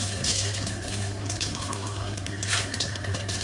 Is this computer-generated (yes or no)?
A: yes